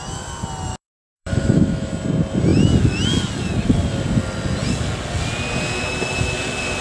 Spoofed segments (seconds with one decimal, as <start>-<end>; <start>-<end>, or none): 0.7-1.9